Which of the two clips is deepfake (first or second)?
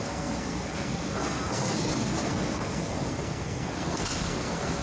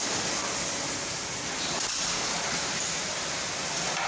first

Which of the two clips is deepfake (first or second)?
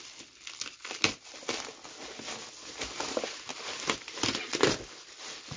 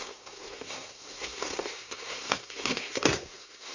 second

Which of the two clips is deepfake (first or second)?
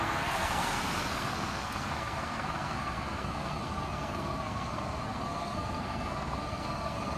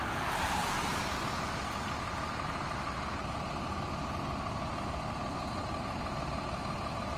first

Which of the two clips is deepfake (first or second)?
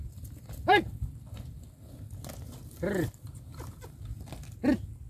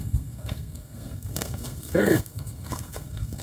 second